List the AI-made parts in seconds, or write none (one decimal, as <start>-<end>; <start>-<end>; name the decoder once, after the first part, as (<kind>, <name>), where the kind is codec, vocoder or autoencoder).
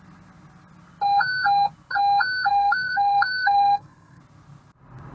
2.5-4.2 (codec, SNAC)